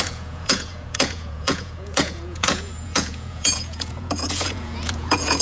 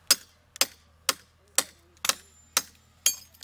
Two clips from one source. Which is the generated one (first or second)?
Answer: first